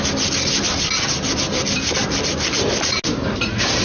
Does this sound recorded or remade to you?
recorded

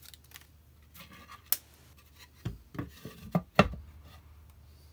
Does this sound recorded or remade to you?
recorded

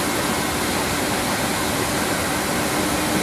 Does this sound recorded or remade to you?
recorded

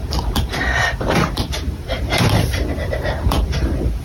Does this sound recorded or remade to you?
remade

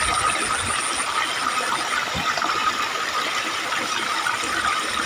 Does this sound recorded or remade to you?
recorded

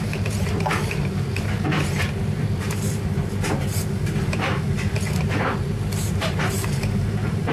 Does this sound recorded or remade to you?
remade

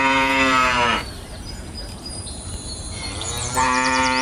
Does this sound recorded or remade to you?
remade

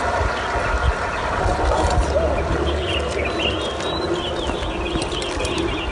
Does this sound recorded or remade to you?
recorded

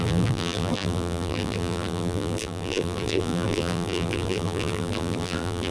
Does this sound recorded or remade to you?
remade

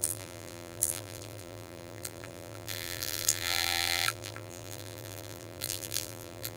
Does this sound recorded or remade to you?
remade